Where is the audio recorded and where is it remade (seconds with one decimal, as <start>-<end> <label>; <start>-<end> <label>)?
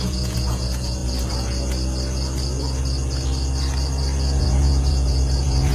0.0-1.0 remade; 1.0-4.4 recorded; 4.4-5.7 remade